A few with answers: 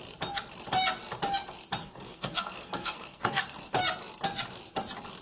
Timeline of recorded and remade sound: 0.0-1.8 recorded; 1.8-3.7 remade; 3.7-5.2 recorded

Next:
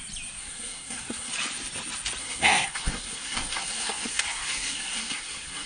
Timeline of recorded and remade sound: 0.0-0.4 recorded; 0.4-1.3 remade; 1.3-2.2 recorded; 2.2-5.7 remade

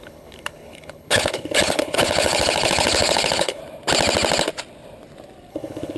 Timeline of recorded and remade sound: 0.0-3.6 remade; 3.6-5.5 recorded; 5.5-6.0 remade